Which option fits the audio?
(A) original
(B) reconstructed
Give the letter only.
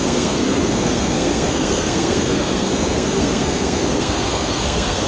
B